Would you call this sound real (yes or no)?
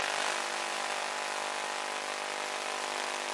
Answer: yes